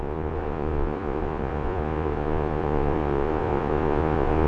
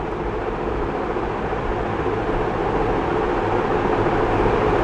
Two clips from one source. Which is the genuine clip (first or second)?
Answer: second